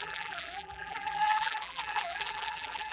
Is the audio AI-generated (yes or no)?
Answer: yes